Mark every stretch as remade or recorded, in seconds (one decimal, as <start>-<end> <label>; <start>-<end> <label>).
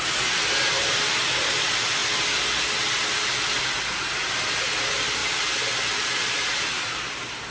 0.0-7.5 recorded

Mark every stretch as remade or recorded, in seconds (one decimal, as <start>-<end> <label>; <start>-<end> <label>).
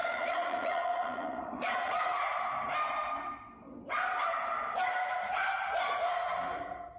0.0-2.0 remade; 2.0-7.0 recorded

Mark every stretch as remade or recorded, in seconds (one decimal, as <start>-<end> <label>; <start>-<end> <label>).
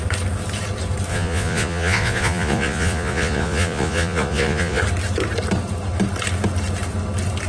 0.0-1.1 recorded; 1.1-4.8 remade; 4.8-7.5 recorded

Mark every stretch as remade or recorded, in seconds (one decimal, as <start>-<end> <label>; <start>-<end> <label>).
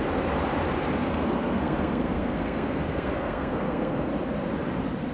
0.0-1.0 recorded; 1.0-4.1 remade; 4.1-5.1 recorded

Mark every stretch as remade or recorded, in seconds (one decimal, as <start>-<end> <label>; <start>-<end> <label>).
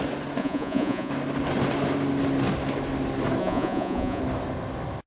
0.0-0.4 recorded; 0.4-1.1 remade; 1.1-3.4 recorded; 3.4-4.2 remade; 4.2-5.1 recorded